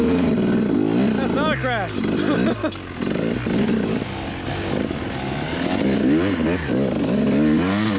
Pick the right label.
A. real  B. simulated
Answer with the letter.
A